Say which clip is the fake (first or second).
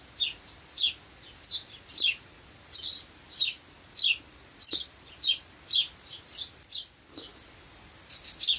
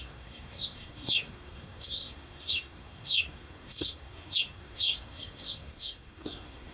second